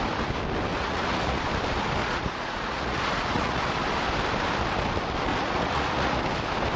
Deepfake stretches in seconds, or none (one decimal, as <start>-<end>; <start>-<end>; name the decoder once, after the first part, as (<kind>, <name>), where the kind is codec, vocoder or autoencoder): 0.7-1.4 (vocoder, Vocos); 2.0-3.7; 5.3-6.2